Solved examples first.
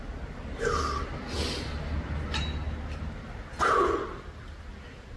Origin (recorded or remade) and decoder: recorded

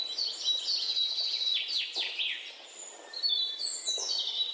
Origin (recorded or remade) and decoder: recorded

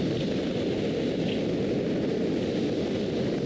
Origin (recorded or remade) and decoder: recorded